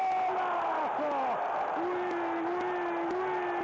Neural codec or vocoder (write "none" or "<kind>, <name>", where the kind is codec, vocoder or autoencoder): none